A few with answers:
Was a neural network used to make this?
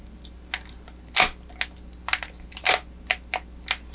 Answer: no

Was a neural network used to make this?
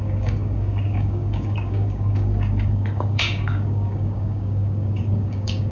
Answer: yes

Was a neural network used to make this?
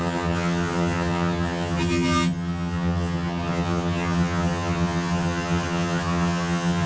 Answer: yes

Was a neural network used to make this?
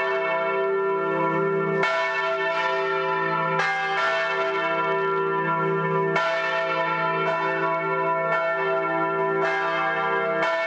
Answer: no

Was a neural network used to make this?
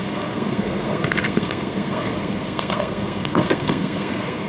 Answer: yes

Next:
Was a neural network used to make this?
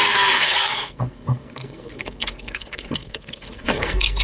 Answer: yes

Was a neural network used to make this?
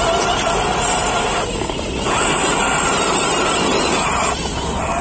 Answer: no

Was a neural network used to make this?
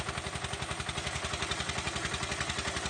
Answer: no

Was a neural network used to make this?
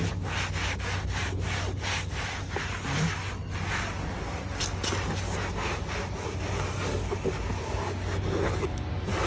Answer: no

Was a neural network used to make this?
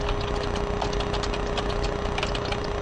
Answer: no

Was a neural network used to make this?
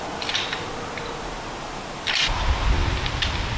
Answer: no